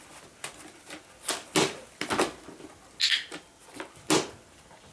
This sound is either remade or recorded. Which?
recorded